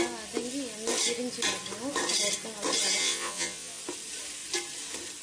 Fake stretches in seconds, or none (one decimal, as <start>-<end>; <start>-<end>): 3.0-3.8